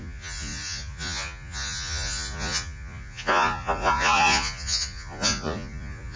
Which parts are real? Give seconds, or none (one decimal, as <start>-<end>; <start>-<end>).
none